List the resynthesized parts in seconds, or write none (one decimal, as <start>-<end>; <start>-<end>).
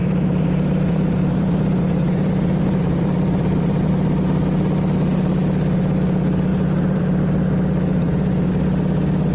0.0-3.9; 6.5-7.2; 7.9-8.5